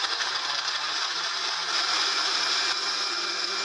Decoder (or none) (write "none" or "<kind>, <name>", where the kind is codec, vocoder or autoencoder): none